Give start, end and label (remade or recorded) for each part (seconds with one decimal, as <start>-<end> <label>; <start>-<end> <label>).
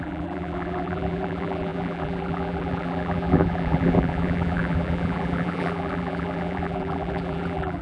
0.0-7.8 remade